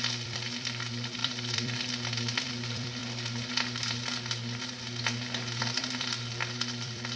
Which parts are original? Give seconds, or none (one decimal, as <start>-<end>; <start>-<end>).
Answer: 3.0-5.6